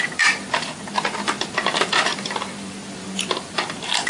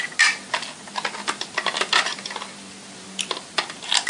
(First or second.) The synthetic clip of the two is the first